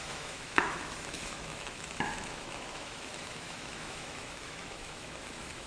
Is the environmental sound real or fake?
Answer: fake